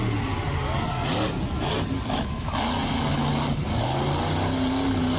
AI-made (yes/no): no